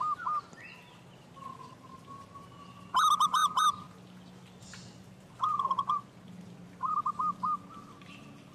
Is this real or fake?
real